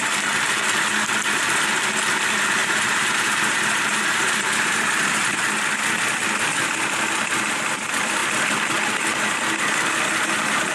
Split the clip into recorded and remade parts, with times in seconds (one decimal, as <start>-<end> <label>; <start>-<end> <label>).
0.0-2.6 recorded; 2.6-5.2 remade; 5.2-10.7 recorded